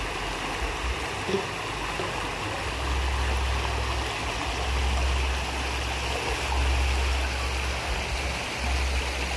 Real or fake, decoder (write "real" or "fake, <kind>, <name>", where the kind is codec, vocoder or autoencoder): real